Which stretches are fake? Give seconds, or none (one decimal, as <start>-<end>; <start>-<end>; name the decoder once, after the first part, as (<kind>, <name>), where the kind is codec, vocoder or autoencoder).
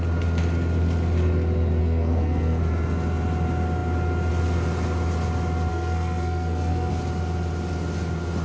1.8-2.6 (codec, SNAC); 5.7-6.9